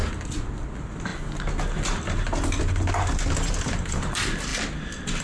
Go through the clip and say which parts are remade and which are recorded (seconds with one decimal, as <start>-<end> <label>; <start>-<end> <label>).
0.0-5.2 recorded